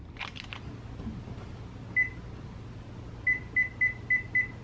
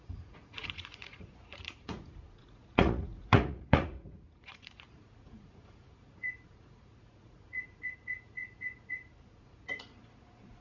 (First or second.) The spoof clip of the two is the second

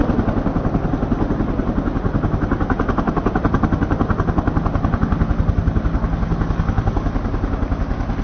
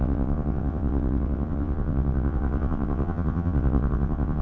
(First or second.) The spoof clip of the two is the second